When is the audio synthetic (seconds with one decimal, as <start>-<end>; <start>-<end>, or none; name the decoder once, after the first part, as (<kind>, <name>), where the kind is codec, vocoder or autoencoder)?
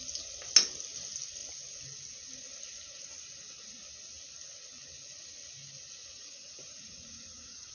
6.0-7.7 (vocoder, Vocos)